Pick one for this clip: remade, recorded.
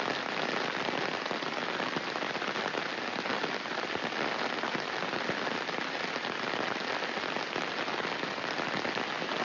recorded